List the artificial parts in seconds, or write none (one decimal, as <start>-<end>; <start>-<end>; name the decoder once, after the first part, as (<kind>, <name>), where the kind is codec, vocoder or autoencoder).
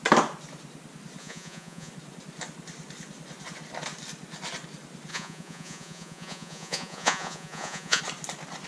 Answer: 1.2-1.9 (vocoder, Vocos); 5.1-8.0